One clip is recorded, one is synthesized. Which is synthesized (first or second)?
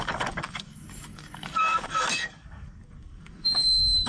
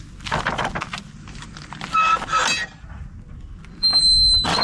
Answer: first